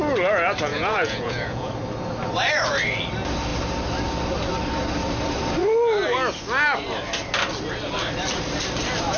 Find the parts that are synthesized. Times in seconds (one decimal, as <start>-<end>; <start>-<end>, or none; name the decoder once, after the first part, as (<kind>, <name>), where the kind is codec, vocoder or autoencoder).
0.7-1.7 (vocoder, Vocos)